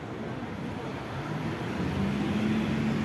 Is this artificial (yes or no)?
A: no